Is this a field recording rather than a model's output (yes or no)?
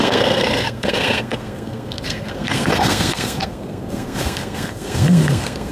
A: no